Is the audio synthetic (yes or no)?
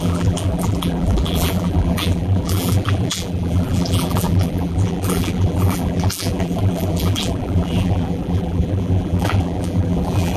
yes